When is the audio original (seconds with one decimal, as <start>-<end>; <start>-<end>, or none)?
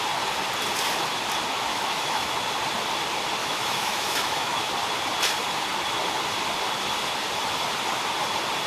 0.0-1.7; 2.3-3.4; 4.7-8.7